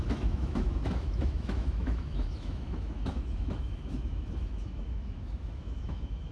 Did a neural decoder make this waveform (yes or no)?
yes